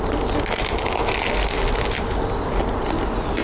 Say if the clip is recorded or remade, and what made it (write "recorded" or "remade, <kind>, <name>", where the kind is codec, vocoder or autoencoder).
recorded